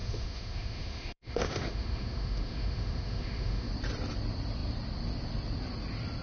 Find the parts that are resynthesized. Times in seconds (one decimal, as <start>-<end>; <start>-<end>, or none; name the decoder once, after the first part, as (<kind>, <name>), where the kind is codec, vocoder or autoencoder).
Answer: 0.0-3.7 (autoencoder, DAC-VAE)